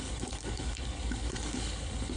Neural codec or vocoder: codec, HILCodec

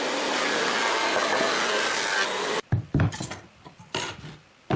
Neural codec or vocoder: none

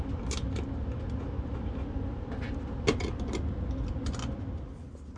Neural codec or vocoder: none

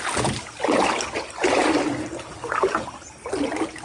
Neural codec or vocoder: none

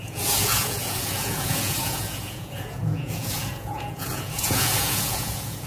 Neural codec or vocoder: vocoder, Vocos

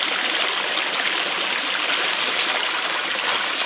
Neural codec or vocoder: none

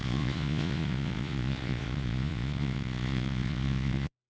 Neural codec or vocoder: vocoder, Vocos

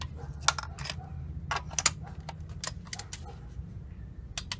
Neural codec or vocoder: none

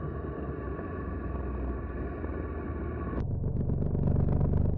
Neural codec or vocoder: none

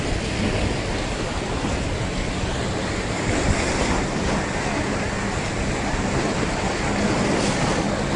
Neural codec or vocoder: none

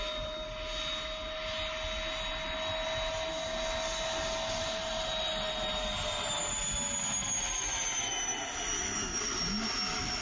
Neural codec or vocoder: none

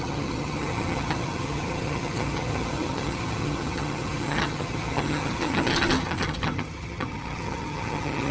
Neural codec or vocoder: vocoder, HiFi-GAN